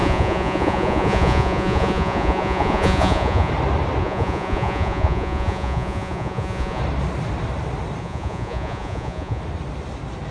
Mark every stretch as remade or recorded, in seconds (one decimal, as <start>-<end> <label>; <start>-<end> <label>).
0.0-3.5 remade; 3.5-4.0 recorded; 4.0-6.8 remade; 6.8-8.0 recorded; 8.0-9.4 remade; 9.4-10.3 recorded